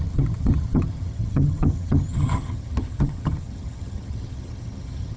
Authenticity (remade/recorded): remade